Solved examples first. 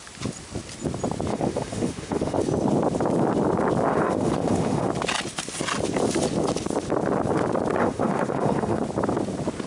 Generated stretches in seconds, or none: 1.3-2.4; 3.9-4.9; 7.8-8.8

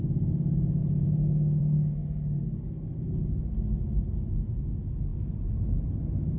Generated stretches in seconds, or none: 0.8-1.6

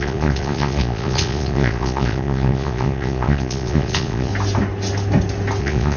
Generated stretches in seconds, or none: 0.0-4.3; 5.6-6.0

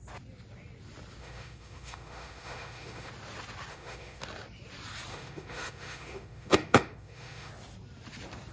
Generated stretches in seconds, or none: 1.2-3.1; 3.7-4.2; 5.1-7.5

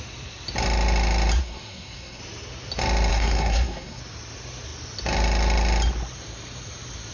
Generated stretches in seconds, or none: 1.4-2.2; 3.1-4.0

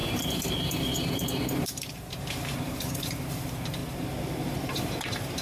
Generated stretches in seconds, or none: 0.0-3.8; 4.4-5.4

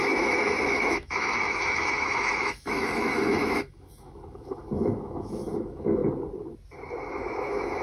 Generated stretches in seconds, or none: 0.0-6.0; 7.1-7.8

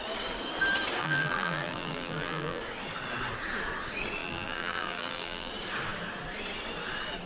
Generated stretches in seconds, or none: 1.0-2.6; 4.2-5.5